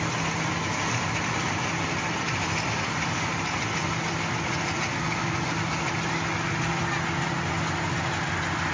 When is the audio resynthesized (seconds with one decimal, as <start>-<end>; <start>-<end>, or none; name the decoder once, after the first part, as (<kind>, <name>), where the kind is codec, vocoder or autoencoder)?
none